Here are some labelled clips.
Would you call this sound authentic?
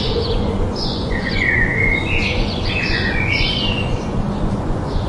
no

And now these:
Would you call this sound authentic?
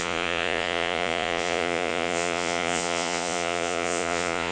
no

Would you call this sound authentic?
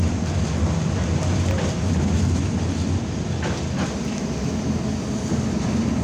yes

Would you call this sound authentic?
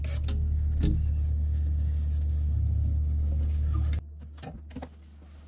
yes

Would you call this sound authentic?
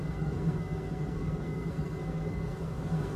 no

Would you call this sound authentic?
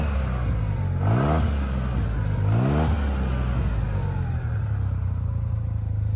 yes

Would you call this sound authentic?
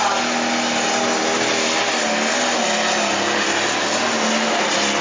yes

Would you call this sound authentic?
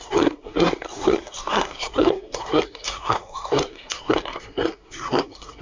no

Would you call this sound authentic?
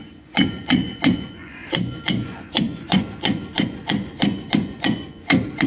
no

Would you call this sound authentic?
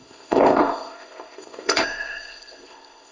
no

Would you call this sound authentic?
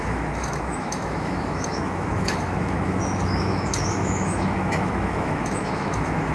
no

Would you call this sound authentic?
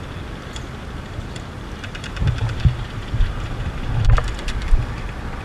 yes